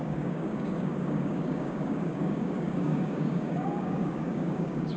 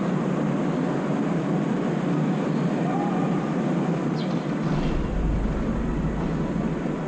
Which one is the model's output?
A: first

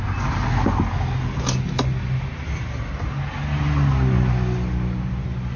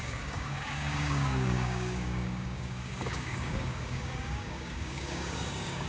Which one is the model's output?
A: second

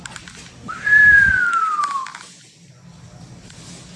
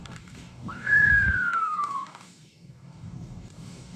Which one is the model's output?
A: second